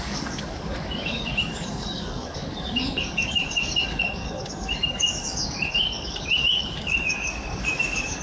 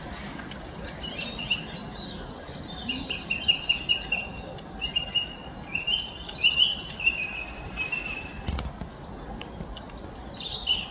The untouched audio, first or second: second